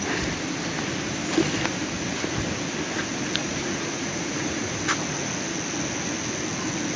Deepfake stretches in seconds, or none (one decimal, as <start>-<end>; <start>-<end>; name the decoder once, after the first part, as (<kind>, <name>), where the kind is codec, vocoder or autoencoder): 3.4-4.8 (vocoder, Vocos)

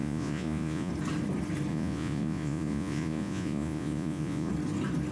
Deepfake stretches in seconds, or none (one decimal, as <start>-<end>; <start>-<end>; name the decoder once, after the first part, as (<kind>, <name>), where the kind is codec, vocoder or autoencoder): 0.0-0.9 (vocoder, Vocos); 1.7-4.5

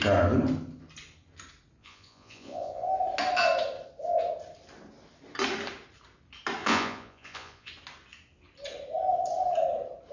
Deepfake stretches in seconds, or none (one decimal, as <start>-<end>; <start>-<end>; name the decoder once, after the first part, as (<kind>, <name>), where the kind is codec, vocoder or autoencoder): 1.8-2.9 (vocoder, Vocos); 6.6-7.7

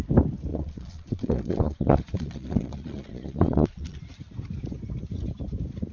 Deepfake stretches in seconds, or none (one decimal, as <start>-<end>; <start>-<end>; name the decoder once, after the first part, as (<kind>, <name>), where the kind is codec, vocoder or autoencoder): 0.5-4.0 (vocoder, Vocos)